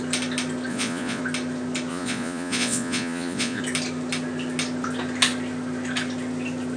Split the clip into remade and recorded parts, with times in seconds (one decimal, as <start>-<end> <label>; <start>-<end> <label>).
0.0-0.7 recorded; 0.7-1.2 remade; 1.2-1.9 recorded; 1.9-3.6 remade; 3.6-6.8 recorded